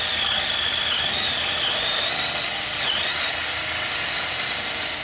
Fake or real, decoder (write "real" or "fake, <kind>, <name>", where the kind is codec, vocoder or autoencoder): real